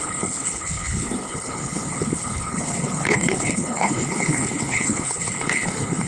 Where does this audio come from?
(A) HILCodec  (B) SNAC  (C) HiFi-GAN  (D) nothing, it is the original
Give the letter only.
A